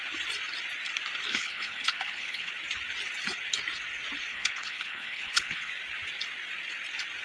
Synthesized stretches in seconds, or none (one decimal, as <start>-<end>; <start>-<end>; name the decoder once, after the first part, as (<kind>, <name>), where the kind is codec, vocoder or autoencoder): 1.3-2.5 (codec, HILCodec); 4.3-5.7